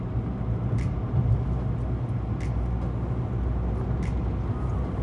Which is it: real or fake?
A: real